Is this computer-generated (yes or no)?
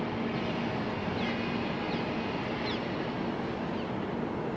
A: no